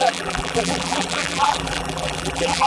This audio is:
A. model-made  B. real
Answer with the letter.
A